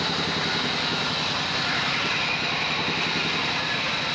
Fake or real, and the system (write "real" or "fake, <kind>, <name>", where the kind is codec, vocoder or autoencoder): real